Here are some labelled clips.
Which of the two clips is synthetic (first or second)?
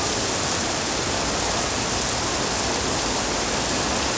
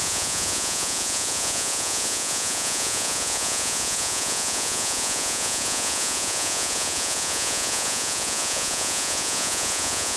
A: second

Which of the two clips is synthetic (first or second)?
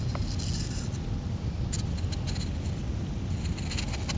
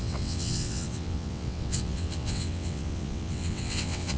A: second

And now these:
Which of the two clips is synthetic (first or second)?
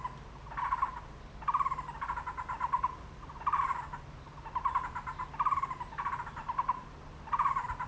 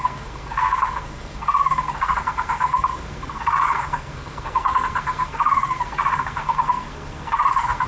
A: second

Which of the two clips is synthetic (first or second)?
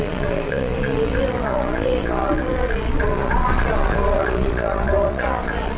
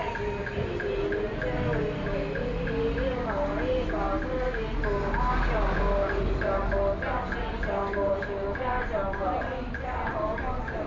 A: first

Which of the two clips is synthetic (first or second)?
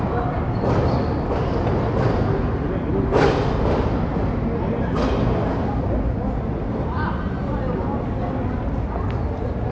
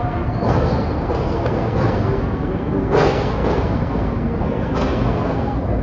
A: second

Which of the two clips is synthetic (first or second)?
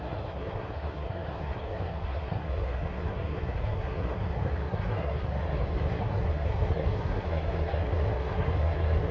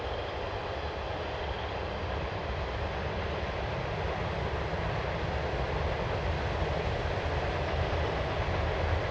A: first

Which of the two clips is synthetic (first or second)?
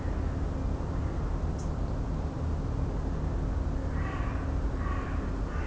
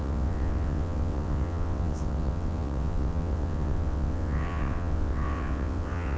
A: second